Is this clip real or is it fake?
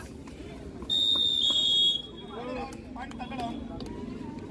real